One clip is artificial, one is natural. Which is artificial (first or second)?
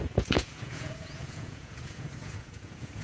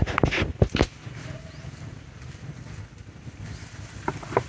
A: first